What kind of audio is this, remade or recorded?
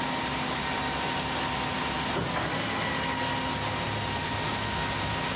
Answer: recorded